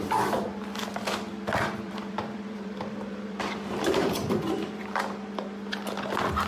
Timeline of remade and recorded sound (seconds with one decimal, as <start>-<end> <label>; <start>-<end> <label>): 0.0-1.3 recorded; 1.3-4.8 remade; 4.8-6.5 recorded